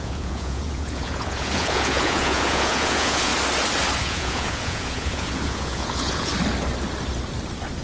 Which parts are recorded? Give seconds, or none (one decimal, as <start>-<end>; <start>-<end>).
3.3-4.0; 6.3-7.8